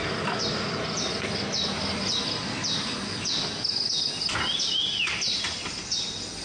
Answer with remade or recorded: recorded